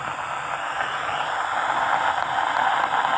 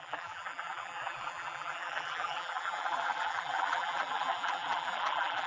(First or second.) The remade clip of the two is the second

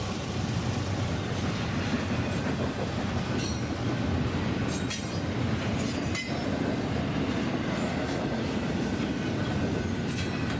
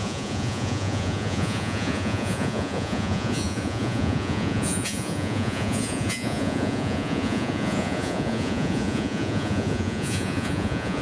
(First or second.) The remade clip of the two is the second